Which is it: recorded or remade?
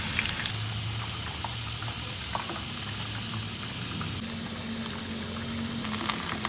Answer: recorded